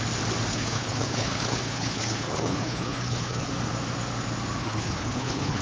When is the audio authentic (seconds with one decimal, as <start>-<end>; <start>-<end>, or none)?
0.0-0.5; 3.5-4.6